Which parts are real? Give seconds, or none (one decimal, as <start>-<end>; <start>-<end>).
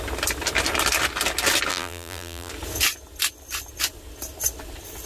0.0-1.7; 2.5-5.1